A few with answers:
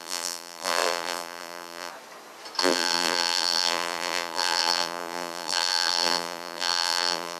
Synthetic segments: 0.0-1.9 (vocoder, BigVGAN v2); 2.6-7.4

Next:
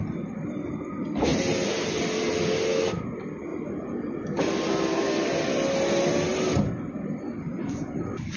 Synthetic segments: none

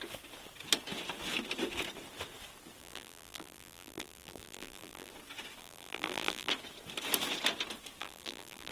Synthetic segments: 2.8-5.1 (vocoder, BigVGAN v2); 5.6-6.5; 8.0-8.7

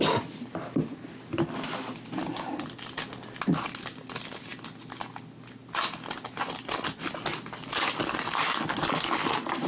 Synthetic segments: none

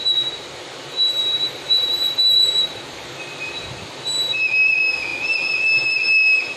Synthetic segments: 1.2-3.2 (vocoder, BigVGAN v2)

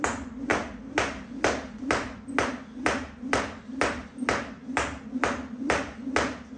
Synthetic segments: none